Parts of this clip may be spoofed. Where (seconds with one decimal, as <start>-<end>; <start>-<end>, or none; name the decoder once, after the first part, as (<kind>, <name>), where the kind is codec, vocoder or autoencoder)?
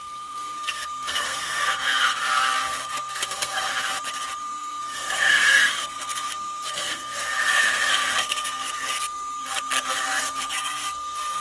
0.0-3.7 (codec, SNAC); 4.4-11.4